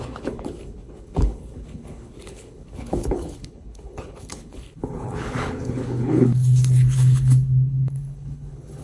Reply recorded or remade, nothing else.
remade